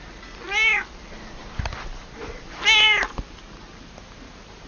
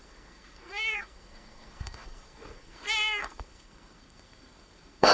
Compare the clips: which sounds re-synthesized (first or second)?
second